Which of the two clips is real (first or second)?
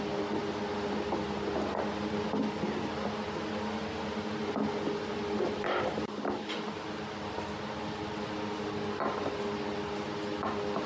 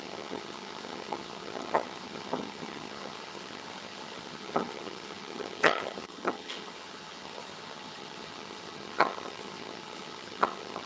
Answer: first